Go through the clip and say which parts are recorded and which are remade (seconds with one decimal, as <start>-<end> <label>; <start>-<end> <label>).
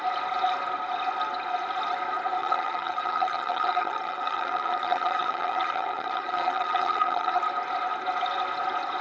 0.0-2.4 recorded; 2.4-7.4 remade; 7.4-9.0 recorded